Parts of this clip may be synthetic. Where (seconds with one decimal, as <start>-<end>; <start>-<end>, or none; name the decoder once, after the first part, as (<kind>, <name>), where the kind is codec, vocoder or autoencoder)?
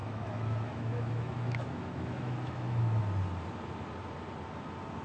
0.0-3.0 (autoencoder, DAC-VAE)